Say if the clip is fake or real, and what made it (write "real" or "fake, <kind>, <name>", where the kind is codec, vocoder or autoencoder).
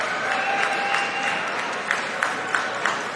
real